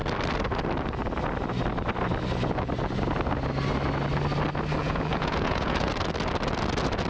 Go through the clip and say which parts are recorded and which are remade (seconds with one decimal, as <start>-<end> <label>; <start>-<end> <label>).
0.0-4.8 recorded; 4.8-5.9 remade; 5.9-7.1 recorded

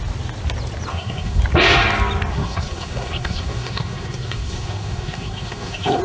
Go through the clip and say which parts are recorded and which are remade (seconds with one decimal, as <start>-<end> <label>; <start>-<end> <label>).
0.0-0.9 recorded; 0.9-1.4 remade; 1.4-2.3 recorded; 2.3-6.0 remade

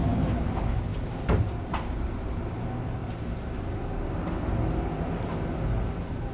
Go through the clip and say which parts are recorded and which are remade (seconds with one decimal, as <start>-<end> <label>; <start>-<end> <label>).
0.0-0.5 remade; 0.5-0.9 recorded; 0.9-2.3 remade; 2.3-3.0 recorded; 3.0-3.6 remade; 3.6-6.3 recorded

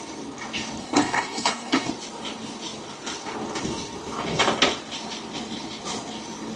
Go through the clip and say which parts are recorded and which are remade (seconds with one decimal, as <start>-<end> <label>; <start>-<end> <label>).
0.0-0.8 recorded; 0.8-1.9 remade; 1.9-6.6 recorded

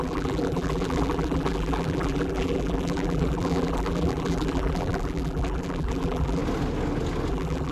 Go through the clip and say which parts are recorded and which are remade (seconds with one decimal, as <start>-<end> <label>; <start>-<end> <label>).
0.0-6.4 remade; 6.4-7.3 recorded; 7.3-7.7 remade

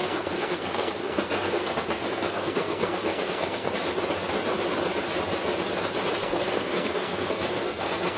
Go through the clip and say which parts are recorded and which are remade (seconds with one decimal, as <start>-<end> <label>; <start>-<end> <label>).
0.0-3.7 remade; 3.7-6.2 recorded; 6.2-8.2 remade